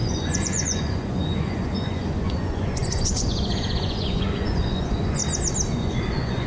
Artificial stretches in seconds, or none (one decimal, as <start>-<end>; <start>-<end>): 0.0-5.2; 5.7-6.5